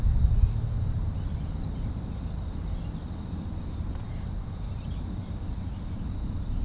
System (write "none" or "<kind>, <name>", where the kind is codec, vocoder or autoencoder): none